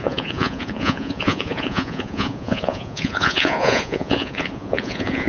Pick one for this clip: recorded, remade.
remade